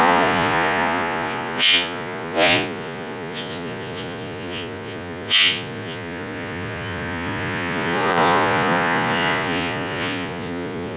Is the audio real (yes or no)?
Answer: no